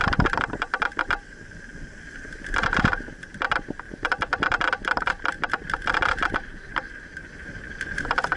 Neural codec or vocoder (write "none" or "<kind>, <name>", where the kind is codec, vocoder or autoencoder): none